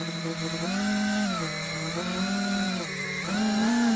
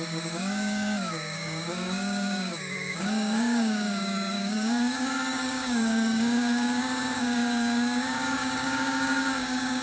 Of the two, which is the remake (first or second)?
second